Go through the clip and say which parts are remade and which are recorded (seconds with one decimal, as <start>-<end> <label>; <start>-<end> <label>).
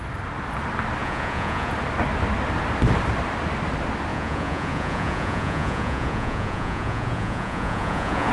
0.0-1.0 recorded; 1.0-1.7 remade; 1.7-4.1 recorded; 4.1-8.3 remade